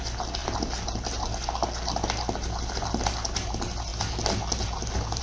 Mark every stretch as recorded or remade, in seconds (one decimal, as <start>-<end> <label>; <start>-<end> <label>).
0.0-5.2 recorded